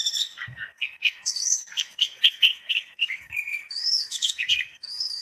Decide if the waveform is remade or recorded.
remade